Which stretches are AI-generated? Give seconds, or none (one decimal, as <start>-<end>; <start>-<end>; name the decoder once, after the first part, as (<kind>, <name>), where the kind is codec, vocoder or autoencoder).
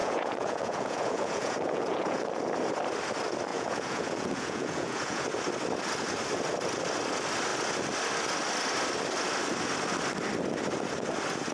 0.0-2.2 (vocoder, Vocos); 3.5-5.2